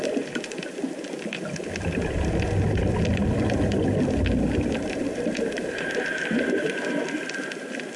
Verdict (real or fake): real